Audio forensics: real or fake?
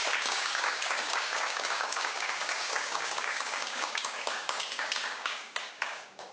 fake